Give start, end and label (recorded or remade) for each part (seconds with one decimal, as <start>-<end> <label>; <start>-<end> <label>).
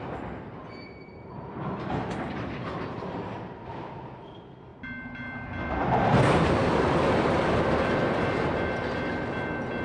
0.0-9.8 recorded